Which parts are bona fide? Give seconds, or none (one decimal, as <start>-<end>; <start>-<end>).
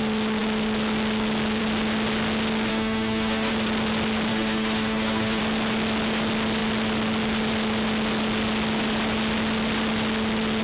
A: 0.0-2.7; 3.5-4.3; 5.4-10.6